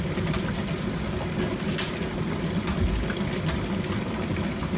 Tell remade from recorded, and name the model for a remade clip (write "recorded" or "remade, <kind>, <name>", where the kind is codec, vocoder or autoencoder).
recorded